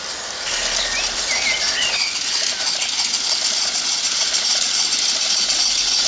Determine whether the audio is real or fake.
real